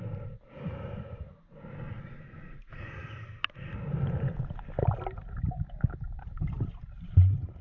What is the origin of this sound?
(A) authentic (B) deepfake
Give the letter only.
A